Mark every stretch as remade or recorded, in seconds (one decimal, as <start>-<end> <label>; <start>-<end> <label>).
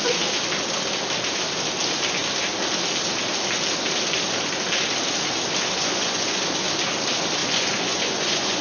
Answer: 0.0-5.8 recorded; 5.8-6.4 remade; 6.4-7.4 recorded; 7.4-8.6 remade